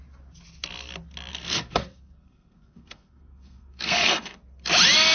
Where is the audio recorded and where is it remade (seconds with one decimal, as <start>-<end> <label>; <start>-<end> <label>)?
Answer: 0.0-1.3 recorded; 1.3-4.4 remade; 4.4-5.1 recorded